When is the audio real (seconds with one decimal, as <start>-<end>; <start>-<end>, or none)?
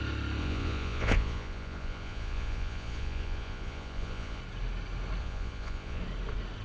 0.0-0.4; 4.4-5.2; 6.0-6.6